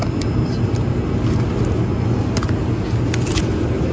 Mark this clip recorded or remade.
recorded